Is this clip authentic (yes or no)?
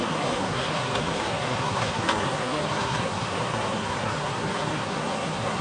no